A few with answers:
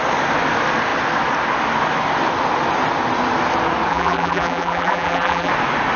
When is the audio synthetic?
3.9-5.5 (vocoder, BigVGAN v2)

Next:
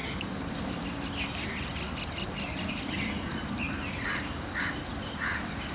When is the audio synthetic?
3.3-4.6 (vocoder, BigVGAN v2)

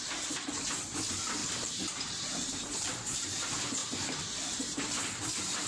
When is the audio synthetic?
1.4-3.1 (vocoder, BigVGAN v2); 3.8-4.8

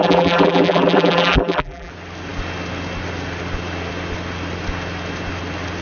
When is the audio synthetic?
0.0-1.9 (vocoder, BigVGAN v2)

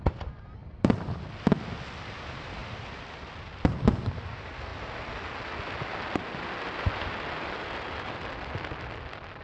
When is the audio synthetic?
0.6-1.4 (vocoder, BigVGAN v2); 2.6-4.0

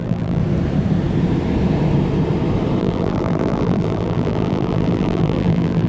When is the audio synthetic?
0.0-0.4 (vocoder, BigVGAN v2); 2.8-5.9

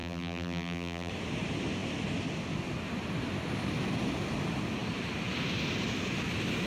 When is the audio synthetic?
0.0-1.1 (vocoder, BigVGAN v2)

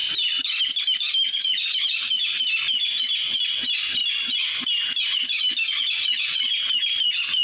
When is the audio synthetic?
none